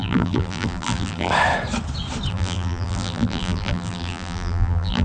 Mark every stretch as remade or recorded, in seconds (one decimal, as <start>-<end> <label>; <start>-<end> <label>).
0.0-1.3 remade; 1.3-2.3 recorded; 2.3-5.0 remade